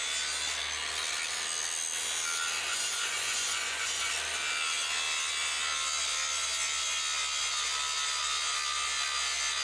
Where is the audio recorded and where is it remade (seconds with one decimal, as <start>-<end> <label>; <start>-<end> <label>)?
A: 0.0-2.7 recorded; 2.7-4.1 remade; 4.1-9.6 recorded